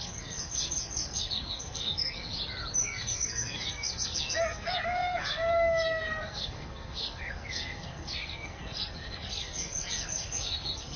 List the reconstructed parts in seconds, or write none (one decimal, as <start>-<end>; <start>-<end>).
0.0-2.3; 2.8-11.0